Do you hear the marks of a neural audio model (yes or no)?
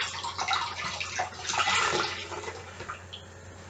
no